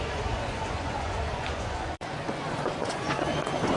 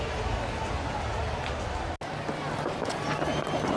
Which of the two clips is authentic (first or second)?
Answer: second